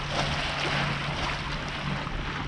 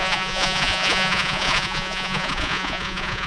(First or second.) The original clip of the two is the first